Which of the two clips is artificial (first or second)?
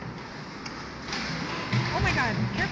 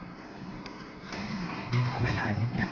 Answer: second